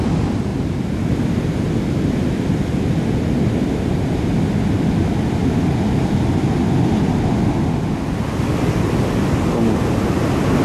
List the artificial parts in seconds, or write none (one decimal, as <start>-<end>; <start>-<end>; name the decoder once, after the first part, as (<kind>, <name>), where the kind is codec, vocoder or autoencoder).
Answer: 0.5-1.0 (vocoder, BigVGAN v2)